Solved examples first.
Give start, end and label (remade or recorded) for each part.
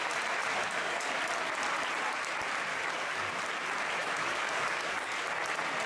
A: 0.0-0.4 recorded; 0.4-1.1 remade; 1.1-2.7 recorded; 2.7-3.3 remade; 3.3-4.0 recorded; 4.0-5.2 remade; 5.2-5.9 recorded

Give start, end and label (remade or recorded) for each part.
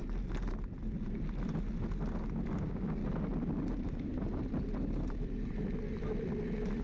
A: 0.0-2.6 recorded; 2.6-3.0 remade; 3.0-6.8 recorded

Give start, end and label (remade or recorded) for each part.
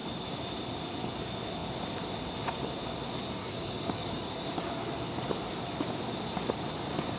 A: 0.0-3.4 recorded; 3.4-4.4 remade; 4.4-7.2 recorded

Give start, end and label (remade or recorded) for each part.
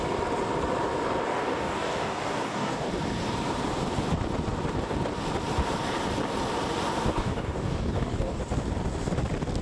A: 0.0-1.3 recorded; 1.3-2.9 remade; 2.9-7.1 recorded; 7.1-8.4 remade; 8.4-9.6 recorded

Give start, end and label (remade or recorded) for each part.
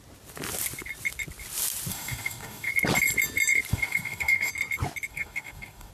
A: 0.0-1.9 recorded; 1.9-2.7 remade; 2.7-3.7 recorded; 3.7-4.5 remade; 4.5-5.1 recorded; 5.1-5.9 remade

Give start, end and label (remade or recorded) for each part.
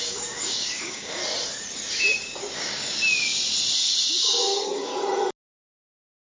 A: 0.0-1.2 remade; 1.2-1.9 recorded; 1.9-3.0 remade; 3.0-3.7 recorded; 3.7-4.9 remade; 4.9-5.5 recorded; 5.5-6.2 remade